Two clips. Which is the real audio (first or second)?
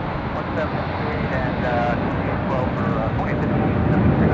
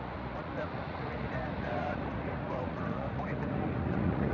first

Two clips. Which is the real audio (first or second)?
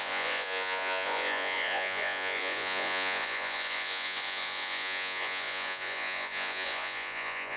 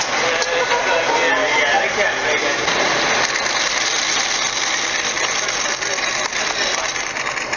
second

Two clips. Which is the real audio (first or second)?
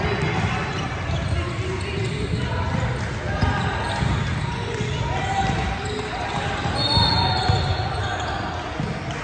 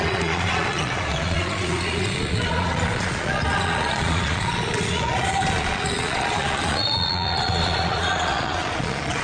first